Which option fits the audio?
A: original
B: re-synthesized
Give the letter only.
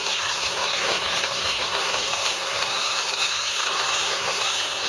B